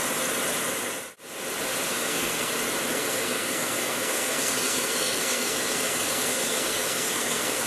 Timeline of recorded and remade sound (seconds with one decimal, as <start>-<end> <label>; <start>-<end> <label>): 0.0-1.9 recorded; 1.9-2.5 remade; 2.5-2.9 recorded; 2.9-7.7 remade